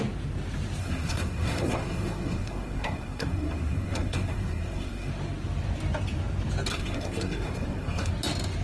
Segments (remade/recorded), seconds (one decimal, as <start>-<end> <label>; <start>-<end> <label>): 0.0-0.8 recorded; 0.8-5.1 remade; 5.1-6.7 recorded; 6.7-8.1 remade; 8.1-8.6 recorded